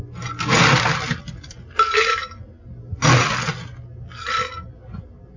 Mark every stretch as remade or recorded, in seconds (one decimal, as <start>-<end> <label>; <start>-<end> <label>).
0.0-5.4 recorded